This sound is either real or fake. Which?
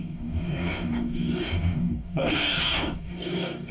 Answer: fake